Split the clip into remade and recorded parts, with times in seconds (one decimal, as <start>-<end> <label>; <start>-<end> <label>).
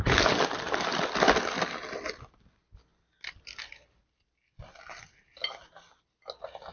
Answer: 0.0-6.7 recorded